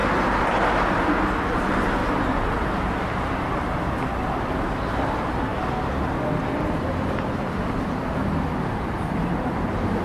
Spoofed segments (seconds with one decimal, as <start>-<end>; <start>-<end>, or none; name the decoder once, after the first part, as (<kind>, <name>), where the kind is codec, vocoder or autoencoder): 1.5-2.0 (vocoder, BigVGAN v2); 4.5-5.5; 8.7-10.0